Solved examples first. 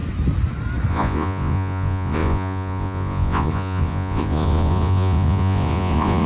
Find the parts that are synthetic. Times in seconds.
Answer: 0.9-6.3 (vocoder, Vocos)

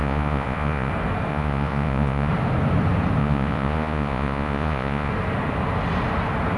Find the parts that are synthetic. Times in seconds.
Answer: 0.0-0.9 (vocoder, Vocos); 1.3-2.3; 3.2-5.1

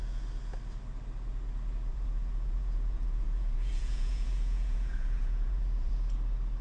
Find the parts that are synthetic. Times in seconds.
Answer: 1.9-5.9 (vocoder, Vocos)

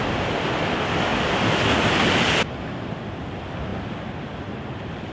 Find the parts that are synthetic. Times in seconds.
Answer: none

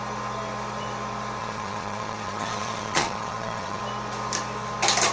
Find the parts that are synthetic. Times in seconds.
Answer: 1.4-3.8 (vocoder, Vocos)

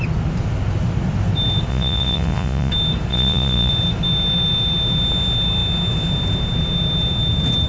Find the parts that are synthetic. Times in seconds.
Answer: 1.7-2.7 (vocoder, Vocos); 3.1-3.7

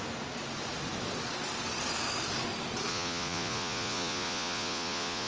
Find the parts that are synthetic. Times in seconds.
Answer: 2.9-5.3 (vocoder, Vocos)

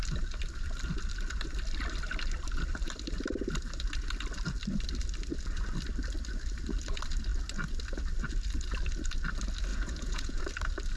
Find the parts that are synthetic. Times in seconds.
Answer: 9.7-10.4 (vocoder, Vocos)